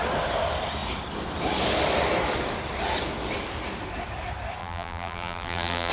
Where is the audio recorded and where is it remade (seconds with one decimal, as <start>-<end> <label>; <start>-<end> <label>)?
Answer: 0.0-4.6 recorded; 4.6-5.9 remade